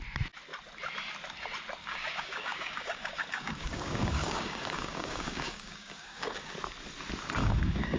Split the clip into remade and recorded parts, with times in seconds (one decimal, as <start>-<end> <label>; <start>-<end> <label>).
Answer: 0.0-1.8 recorded; 1.8-6.5 remade; 6.5-7.4 recorded; 7.4-8.0 remade